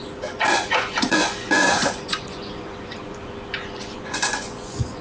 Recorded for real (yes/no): no